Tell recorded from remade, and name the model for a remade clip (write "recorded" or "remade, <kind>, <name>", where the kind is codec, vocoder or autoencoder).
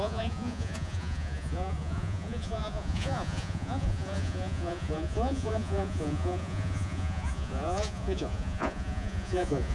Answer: remade, vocoder, Vocos